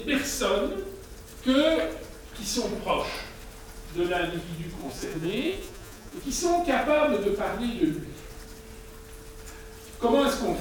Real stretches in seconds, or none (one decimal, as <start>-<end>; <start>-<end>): 0.0-4.8; 6.2-10.6